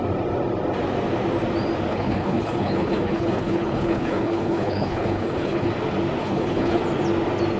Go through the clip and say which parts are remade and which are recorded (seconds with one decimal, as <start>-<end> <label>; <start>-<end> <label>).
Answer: 0.0-1.9 recorded; 1.9-5.7 remade; 5.7-6.2 recorded; 6.2-6.8 remade; 6.8-7.6 recorded